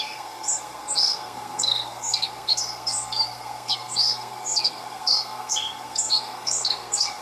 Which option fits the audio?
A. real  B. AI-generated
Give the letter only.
B